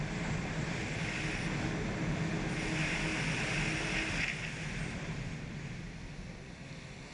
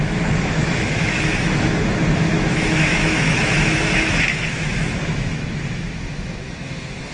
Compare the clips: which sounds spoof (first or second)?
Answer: second